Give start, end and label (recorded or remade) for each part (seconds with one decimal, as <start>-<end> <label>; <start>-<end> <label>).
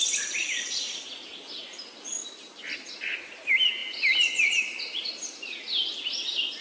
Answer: 0.0-0.4 recorded; 0.4-1.3 remade; 1.3-2.2 recorded; 2.2-2.9 remade; 2.9-3.8 recorded; 3.8-5.1 remade; 5.1-6.6 recorded